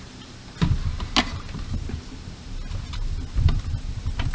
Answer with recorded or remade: recorded